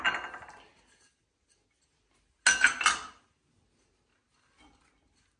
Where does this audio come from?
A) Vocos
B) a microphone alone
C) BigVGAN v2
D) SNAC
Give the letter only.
B